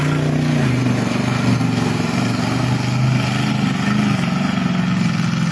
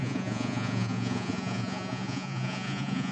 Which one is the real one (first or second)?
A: first